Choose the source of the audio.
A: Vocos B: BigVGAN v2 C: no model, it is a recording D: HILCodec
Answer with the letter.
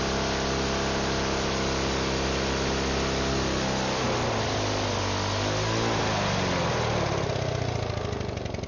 C